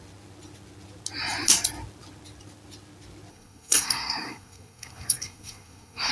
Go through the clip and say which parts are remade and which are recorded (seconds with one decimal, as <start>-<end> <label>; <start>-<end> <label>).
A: 0.0-3.3 recorded; 3.3-6.1 remade